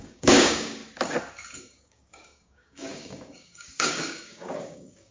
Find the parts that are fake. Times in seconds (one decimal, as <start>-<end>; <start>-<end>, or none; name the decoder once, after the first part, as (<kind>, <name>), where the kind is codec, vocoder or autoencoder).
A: 0.0-0.8 (codec, DAC); 1.6-5.1